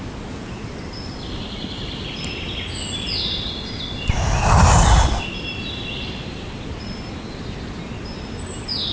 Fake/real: real